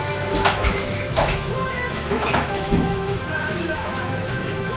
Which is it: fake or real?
fake